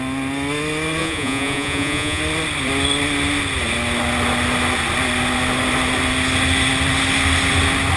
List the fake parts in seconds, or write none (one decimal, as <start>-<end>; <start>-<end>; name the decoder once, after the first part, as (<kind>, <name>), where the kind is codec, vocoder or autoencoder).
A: 1.0-2.2 (vocoder, Vocos)